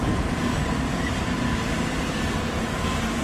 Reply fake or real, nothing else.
fake